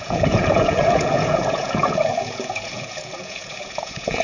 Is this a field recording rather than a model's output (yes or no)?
no